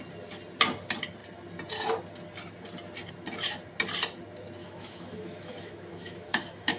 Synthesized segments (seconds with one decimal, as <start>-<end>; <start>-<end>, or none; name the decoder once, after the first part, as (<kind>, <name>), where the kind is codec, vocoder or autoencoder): 4.6-6.8 (autoencoder, DAC-VAE)